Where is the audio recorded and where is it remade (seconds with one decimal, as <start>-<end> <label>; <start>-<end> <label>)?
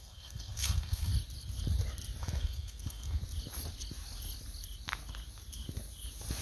0.0-1.1 remade; 1.1-2.2 recorded; 2.2-3.2 remade; 3.2-6.4 recorded